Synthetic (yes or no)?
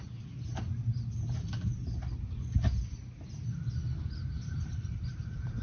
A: no